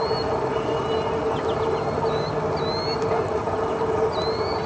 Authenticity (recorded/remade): recorded